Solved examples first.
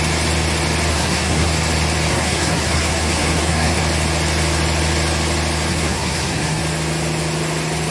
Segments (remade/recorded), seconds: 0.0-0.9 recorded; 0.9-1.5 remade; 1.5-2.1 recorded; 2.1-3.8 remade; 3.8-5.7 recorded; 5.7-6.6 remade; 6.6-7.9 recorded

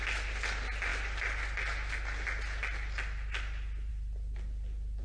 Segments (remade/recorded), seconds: 0.0-5.0 recorded